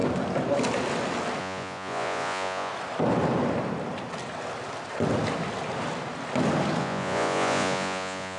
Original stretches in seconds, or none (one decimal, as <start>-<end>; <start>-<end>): 0.0-1.4; 2.7-6.8